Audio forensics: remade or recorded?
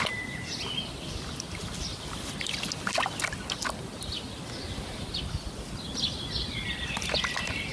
recorded